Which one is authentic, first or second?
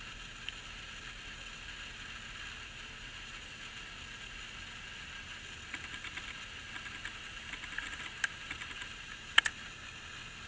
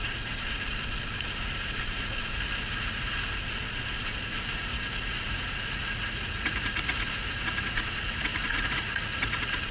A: first